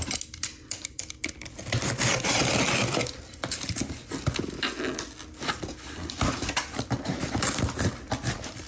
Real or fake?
real